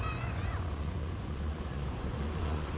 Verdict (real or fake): fake